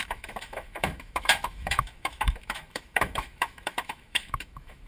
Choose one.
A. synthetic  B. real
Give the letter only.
A